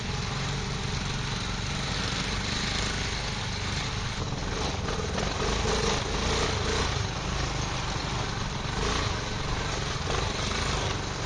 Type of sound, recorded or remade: recorded